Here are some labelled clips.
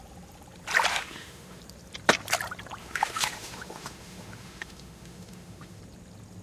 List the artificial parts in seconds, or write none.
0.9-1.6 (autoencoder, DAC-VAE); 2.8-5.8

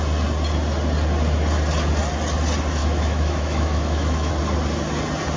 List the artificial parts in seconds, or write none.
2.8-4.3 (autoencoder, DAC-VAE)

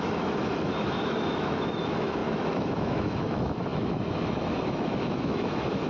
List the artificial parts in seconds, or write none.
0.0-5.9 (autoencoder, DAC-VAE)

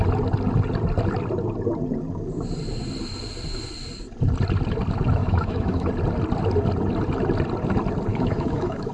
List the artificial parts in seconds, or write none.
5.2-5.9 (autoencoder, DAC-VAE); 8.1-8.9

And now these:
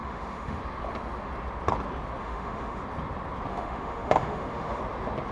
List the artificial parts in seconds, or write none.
0.0-0.6 (autoencoder, DAC-VAE); 2.2-2.8; 3.5-4.8

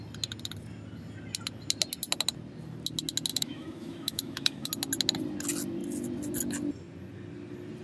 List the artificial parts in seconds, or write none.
3.3-4.7 (autoencoder, DAC-VAE)

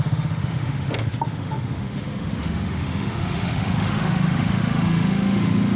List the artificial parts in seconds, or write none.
0.0-5.8 (autoencoder, DAC-VAE)